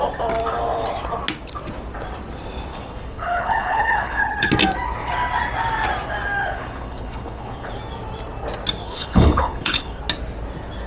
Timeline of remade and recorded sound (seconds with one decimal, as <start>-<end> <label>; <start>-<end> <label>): 0.0-2.7 recorded; 2.7-4.5 remade; 4.5-6.4 recorded; 6.4-7.7 remade; 7.7-8.8 recorded; 8.8-10.0 remade; 10.0-10.9 recorded